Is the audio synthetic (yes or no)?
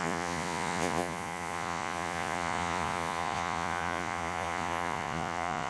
yes